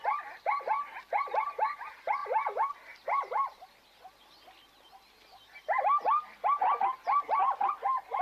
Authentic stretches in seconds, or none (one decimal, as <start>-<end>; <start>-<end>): 0.0-8.2